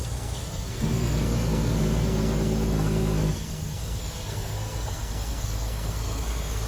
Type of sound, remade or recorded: remade